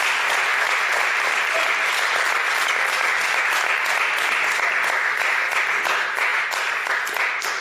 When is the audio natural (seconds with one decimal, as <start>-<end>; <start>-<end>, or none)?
0.0-7.6